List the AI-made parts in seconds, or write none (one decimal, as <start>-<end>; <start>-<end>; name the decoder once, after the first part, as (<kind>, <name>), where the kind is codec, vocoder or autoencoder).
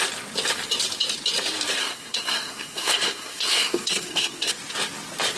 1.8-4.5 (codec, SNAC)